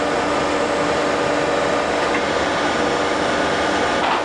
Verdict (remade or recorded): recorded